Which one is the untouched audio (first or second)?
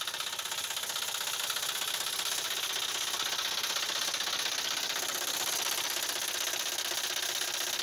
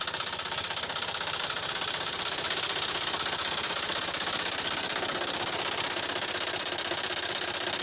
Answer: first